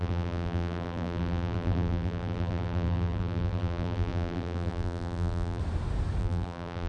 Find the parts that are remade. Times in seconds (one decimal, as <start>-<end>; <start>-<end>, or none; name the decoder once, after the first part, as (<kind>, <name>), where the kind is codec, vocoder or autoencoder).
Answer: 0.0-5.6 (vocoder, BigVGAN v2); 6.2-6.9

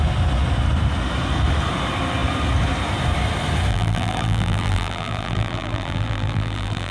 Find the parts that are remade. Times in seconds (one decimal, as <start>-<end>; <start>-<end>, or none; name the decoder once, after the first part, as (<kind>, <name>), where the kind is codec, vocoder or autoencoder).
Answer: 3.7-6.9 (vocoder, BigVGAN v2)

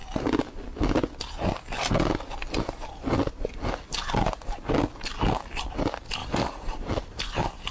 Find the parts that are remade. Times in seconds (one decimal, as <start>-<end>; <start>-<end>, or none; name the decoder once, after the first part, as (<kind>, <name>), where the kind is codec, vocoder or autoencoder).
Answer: 6.2-7.7 (vocoder, BigVGAN v2)

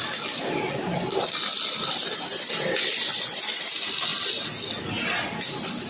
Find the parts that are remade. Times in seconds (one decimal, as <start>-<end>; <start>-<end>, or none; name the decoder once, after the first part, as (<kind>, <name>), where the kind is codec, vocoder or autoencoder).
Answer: none

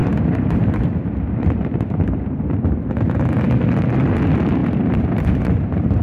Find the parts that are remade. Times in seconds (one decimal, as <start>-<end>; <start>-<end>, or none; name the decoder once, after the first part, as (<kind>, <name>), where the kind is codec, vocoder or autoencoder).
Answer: 0.0-2.4 (vocoder, BigVGAN v2); 4.6-6.0

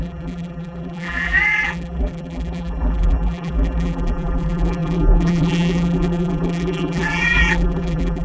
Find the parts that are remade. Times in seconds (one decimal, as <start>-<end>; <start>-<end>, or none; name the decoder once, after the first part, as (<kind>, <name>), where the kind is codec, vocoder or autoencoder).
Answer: 0.0-8.2 (vocoder, BigVGAN v2)